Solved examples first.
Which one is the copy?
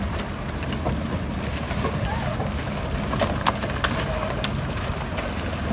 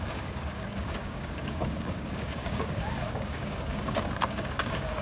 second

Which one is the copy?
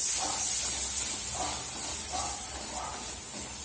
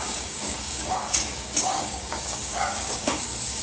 second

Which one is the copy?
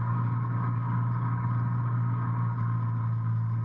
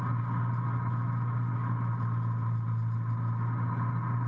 first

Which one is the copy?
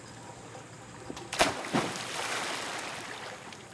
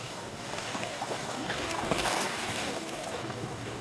second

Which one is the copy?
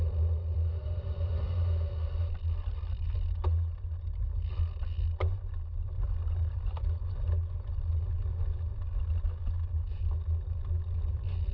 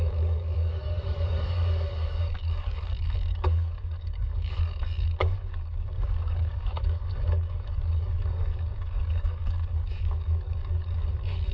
second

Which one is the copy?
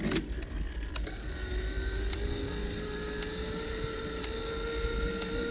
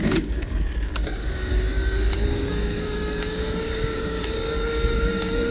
second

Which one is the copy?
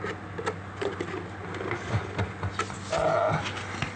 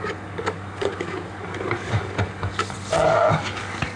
second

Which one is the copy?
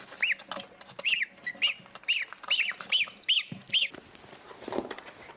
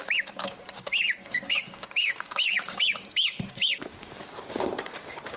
second